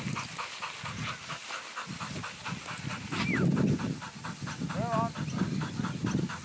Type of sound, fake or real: real